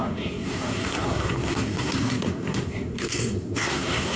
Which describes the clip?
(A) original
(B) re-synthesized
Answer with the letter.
B